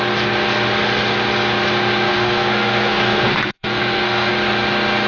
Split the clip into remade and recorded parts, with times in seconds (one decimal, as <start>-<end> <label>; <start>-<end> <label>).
0.0-2.1 recorded; 2.1-4.3 remade; 4.3-5.1 recorded